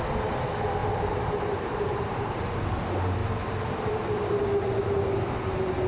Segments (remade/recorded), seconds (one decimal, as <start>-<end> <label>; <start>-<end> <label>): 0.0-0.8 recorded; 0.8-2.5 remade; 2.5-3.2 recorded; 3.2-4.1 remade; 4.1-5.9 recorded